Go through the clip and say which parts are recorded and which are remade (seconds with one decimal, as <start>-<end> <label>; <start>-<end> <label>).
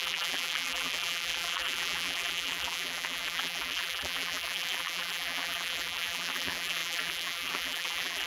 0.0-8.3 remade